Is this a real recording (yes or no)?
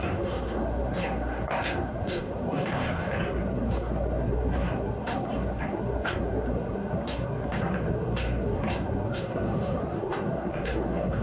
no